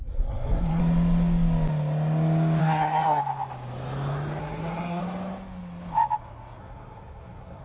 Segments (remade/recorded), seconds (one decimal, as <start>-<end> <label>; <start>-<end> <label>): 0.0-0.8 remade; 0.8-2.6 recorded; 2.6-3.2 remade; 3.2-4.4 recorded; 4.4-5.0 remade; 5.0-6.6 recorded; 6.6-7.6 remade